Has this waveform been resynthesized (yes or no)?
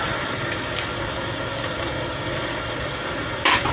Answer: no